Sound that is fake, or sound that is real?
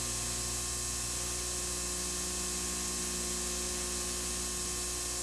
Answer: real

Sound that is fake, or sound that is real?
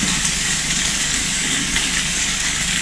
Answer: fake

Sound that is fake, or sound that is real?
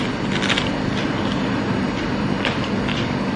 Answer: real